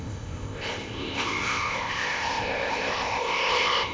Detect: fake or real fake